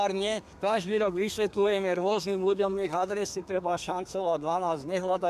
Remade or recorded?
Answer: remade